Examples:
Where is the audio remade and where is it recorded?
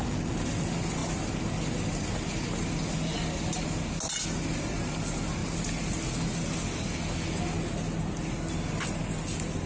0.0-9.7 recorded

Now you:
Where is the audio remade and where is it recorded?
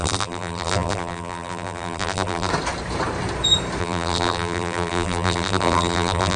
0.0-2.5 remade; 2.5-3.8 recorded; 3.8-6.4 remade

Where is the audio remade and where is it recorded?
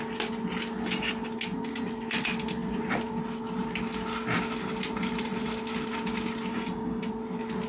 0.0-6.5 recorded; 6.5-7.1 remade; 7.1-7.7 recorded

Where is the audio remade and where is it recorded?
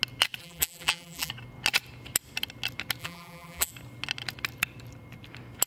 0.0-0.4 recorded; 0.4-1.3 remade; 1.3-3.0 recorded; 3.0-3.7 remade; 3.7-5.7 recorded